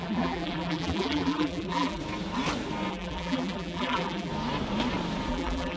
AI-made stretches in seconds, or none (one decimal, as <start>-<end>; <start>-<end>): 0.0-2.0; 2.9-4.3; 5.3-5.8